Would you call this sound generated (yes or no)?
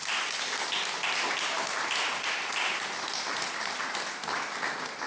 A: no